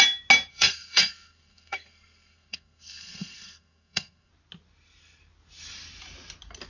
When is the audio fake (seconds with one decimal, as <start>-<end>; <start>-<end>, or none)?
0.5-4.3